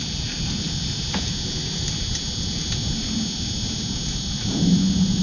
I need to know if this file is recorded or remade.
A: recorded